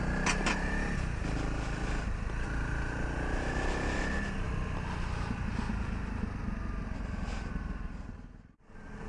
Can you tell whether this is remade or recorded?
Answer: recorded